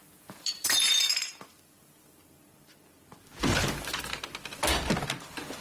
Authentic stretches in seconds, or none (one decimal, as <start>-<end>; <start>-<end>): 1.1-5.6